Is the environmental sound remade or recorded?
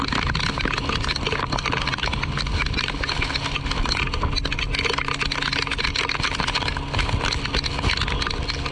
recorded